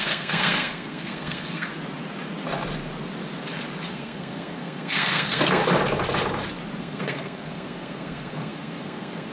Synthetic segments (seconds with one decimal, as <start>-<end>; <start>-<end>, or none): 0.0-1.7; 3.9-5.6; 6.8-9.3